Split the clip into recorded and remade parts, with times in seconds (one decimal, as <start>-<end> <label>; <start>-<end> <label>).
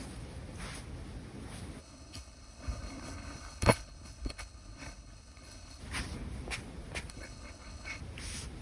0.0-1.8 recorded; 1.8-5.8 remade; 5.8-7.1 recorded; 7.1-8.0 remade; 8.0-8.6 recorded